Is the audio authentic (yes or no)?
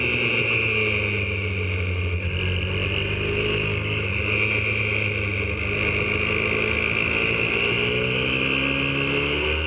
yes